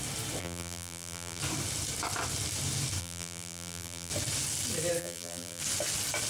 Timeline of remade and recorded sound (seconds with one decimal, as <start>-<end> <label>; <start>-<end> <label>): 0.0-0.4 recorded; 0.4-1.4 remade; 1.4-3.0 recorded; 3.0-4.1 remade; 4.1-5.0 recorded; 5.0-5.6 remade; 5.6-6.3 recorded